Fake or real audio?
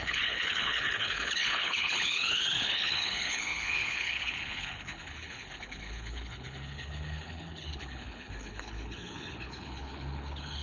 fake